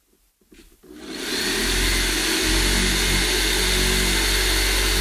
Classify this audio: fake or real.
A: real